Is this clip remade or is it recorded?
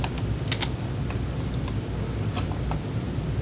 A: recorded